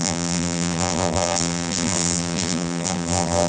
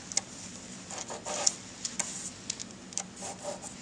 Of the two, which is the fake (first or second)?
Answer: first